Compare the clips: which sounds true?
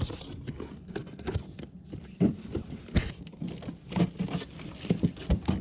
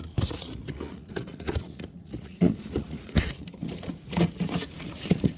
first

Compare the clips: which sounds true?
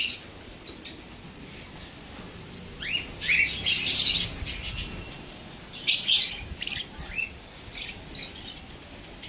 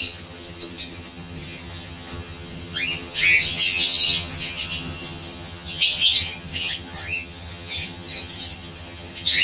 first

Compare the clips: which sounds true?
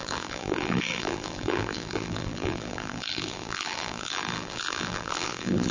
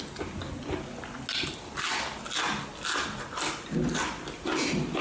second